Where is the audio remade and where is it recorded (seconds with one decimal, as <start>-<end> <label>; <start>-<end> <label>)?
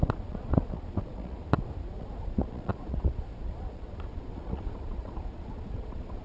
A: 0.0-1.4 remade; 1.4-2.0 recorded; 2.0-6.2 remade